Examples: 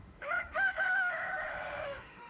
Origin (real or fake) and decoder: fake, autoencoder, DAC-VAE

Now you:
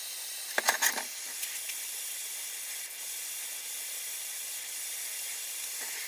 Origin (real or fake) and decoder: real